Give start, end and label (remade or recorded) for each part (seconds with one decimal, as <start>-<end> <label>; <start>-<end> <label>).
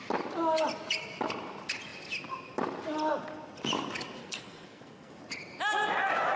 0.0-4.2 recorded; 4.2-5.1 remade; 5.1-6.4 recorded